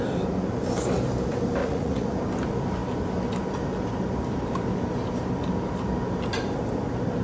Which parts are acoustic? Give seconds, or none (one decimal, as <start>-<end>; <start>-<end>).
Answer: 0.0-1.6; 2.1-7.2